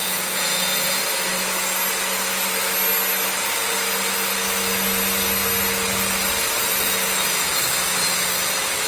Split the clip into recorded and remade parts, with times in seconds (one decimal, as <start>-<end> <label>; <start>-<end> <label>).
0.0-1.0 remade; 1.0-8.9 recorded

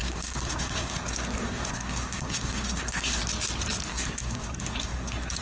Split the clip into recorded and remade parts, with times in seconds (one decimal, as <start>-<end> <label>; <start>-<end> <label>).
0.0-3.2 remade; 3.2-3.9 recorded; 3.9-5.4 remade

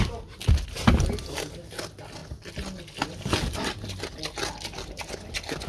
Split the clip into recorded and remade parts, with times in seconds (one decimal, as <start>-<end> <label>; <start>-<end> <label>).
0.0-5.7 recorded